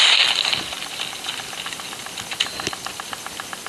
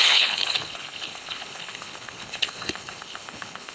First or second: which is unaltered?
first